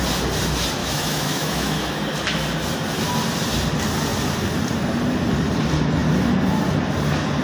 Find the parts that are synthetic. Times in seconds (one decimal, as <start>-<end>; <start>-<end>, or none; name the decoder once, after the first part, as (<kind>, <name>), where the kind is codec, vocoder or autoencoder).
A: 0.8-1.9 (autoencoder, DAC-VAE)